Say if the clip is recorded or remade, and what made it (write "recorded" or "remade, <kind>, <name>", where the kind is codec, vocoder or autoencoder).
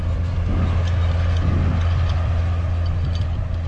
recorded